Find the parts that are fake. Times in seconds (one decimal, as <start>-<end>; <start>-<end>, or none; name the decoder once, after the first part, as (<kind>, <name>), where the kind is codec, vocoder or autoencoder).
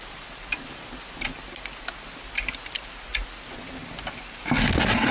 none